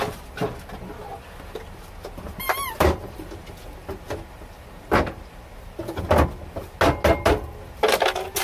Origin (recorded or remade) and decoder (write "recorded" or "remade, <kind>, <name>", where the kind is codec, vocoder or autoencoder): recorded